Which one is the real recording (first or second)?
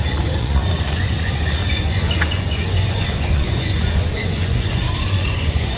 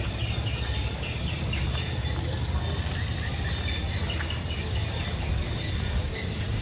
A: second